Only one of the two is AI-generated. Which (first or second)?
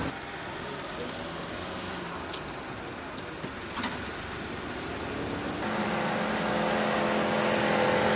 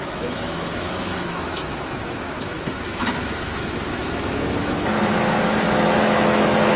second